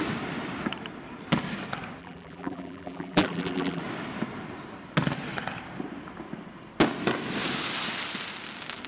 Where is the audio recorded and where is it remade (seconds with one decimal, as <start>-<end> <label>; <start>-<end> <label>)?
0.0-2.0 recorded; 2.0-3.8 remade; 3.8-8.9 recorded